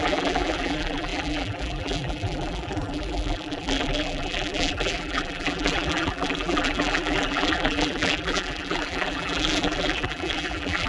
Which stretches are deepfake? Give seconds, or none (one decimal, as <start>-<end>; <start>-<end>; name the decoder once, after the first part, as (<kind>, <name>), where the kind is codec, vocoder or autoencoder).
0.0-10.9 (vocoder, BigVGAN v2)